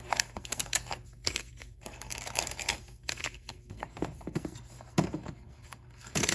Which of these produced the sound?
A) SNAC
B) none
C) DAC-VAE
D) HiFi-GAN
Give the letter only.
A